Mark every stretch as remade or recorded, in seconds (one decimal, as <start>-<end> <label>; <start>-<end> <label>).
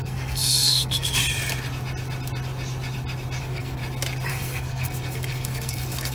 0.0-1.2 remade; 1.2-3.4 recorded; 3.4-3.8 remade; 3.8-4.3 recorded; 4.3-6.1 remade